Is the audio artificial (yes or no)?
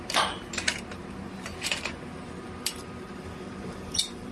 yes